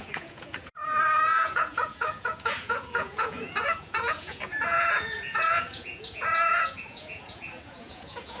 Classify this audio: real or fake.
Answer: fake